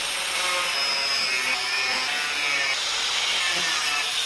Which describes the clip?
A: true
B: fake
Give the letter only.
A